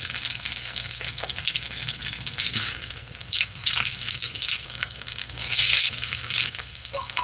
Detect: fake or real fake